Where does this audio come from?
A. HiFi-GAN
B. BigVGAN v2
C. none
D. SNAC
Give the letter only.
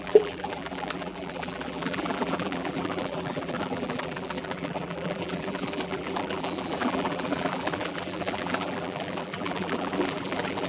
B